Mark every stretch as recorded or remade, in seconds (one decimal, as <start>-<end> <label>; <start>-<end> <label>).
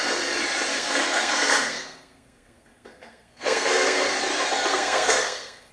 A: 0.0-0.7 recorded; 0.7-4.1 remade; 4.1-4.7 recorded; 4.7-5.7 remade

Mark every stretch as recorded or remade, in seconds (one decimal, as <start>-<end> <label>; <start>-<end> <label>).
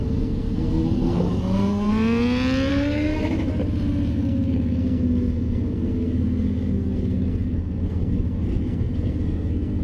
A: 0.0-1.9 remade; 1.9-2.7 recorded; 2.7-3.5 remade; 3.5-4.1 recorded; 4.1-9.8 remade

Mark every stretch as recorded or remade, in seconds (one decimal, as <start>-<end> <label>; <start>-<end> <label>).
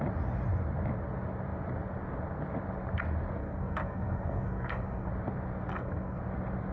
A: 0.0-3.4 recorded; 3.4-5.1 remade; 5.1-5.7 recorded; 5.7-6.2 remade; 6.2-6.7 recorded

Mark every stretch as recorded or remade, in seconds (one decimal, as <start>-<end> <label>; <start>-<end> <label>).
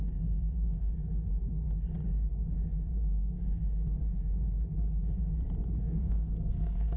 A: 0.0-0.9 remade; 0.9-3.0 recorded; 3.0-3.6 remade; 3.6-5.8 recorded; 5.8-7.0 remade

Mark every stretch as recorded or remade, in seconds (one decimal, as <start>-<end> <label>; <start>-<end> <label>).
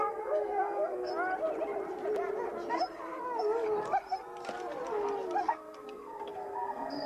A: 0.0-1.1 remade; 1.1-5.4 recorded; 5.4-7.1 remade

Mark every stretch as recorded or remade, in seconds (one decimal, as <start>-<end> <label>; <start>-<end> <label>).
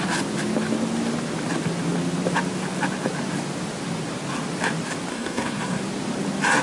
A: 0.0-5.1 recorded; 5.1-5.8 remade; 5.8-6.6 recorded